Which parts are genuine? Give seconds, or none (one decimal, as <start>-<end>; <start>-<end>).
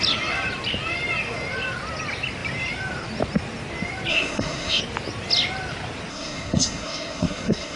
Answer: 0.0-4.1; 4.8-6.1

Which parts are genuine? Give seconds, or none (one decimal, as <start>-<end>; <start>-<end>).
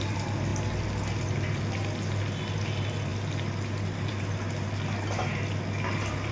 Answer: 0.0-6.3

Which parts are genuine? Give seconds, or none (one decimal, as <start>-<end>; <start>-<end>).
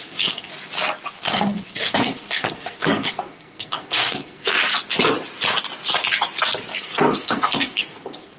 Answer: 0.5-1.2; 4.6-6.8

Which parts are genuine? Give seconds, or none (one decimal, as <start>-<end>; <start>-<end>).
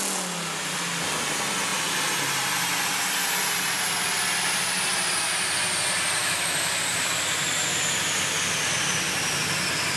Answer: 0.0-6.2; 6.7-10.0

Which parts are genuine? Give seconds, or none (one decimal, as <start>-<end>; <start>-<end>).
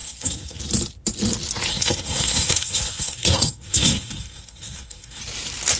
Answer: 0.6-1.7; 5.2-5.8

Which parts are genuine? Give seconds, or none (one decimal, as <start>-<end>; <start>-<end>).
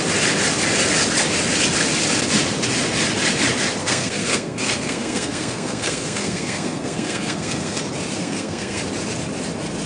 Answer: 0.0-3.8; 7.8-8.2; 8.8-9.9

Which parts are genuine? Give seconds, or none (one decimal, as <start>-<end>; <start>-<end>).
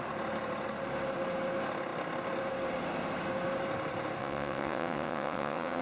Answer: 0.0-4.2